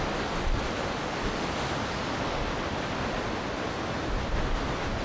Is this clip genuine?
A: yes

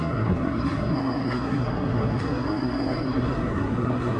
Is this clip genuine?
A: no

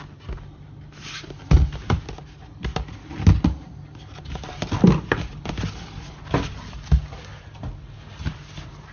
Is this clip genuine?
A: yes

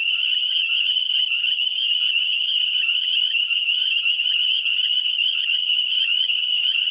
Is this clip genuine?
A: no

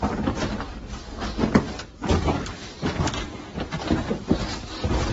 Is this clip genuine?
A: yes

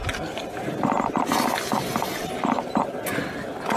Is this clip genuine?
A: yes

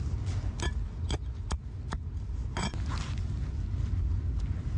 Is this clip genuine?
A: yes